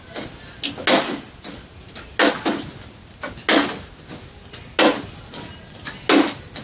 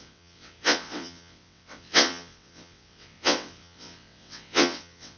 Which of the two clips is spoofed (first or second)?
second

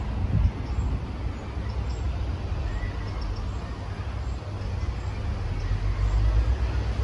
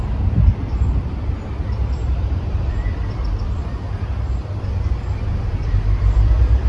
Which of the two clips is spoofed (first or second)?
second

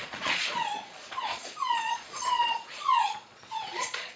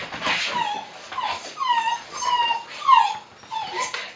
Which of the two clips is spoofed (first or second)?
first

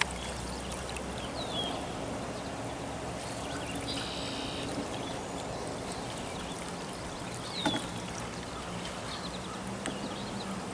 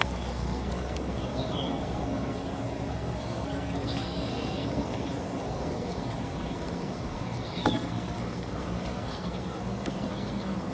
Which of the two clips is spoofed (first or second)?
second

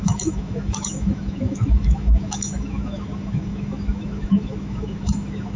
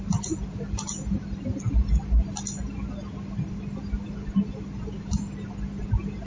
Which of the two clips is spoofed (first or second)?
first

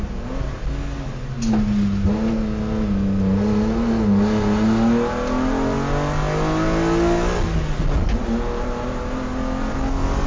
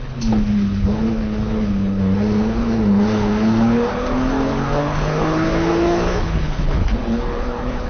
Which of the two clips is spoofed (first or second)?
second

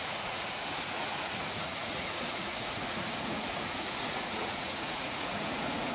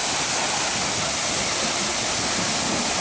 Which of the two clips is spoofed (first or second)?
first